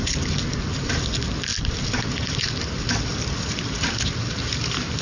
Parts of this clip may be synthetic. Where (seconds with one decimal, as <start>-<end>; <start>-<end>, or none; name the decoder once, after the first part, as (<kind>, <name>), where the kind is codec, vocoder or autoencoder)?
none